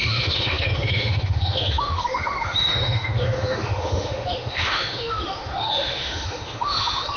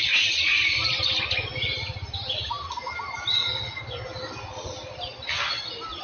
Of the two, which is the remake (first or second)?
first